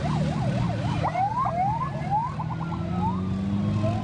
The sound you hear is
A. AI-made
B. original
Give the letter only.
B